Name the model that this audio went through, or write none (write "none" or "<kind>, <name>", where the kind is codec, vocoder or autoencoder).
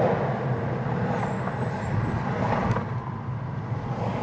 none